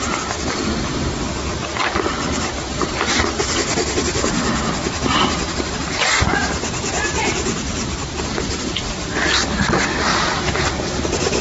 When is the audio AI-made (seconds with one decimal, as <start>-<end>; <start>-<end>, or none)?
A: 1.6-4.0; 10.1-11.0

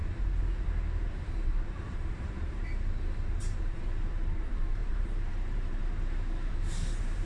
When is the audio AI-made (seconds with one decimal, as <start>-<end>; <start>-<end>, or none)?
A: 1.1-5.8; 6.5-7.2

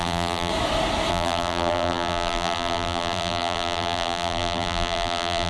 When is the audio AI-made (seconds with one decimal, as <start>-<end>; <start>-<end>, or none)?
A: 0.0-0.5; 1.1-5.5

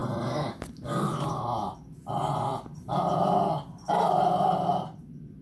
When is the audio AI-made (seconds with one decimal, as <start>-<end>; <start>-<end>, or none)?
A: 0.0-0.7; 2.5-3.3